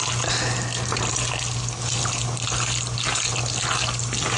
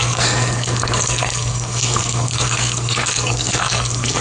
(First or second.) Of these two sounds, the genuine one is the first